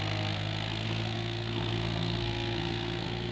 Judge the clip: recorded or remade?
remade